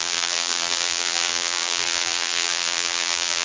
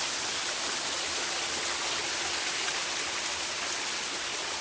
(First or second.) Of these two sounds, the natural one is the second